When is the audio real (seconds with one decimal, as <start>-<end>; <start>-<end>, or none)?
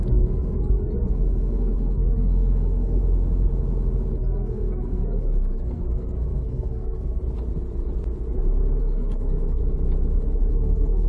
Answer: 3.0-4.1; 7.2-8.8; 9.6-10.5